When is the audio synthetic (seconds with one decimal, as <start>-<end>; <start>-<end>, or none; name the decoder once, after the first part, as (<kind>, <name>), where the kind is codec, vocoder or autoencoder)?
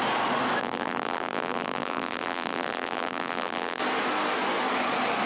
0.6-3.8 (vocoder, BigVGAN v2)